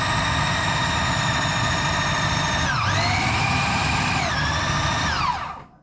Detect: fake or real real